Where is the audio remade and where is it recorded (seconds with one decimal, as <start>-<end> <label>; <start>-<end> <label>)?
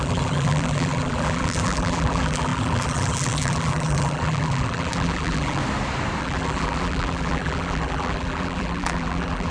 0.0-5.6 remade; 5.6-6.2 recorded; 6.2-9.5 remade